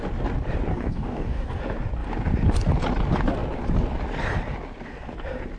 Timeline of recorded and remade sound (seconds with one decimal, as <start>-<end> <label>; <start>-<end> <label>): 0.0-0.7 recorded; 0.7-1.6 remade; 1.6-5.6 recorded